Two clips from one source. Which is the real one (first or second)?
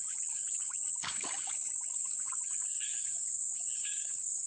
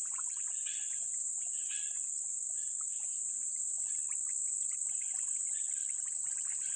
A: second